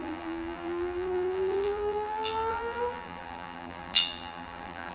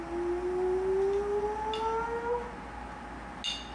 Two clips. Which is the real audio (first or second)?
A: second